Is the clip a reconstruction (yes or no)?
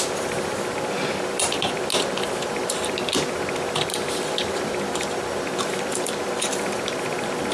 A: yes